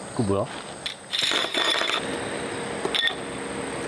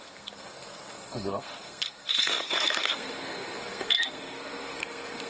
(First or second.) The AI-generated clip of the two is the second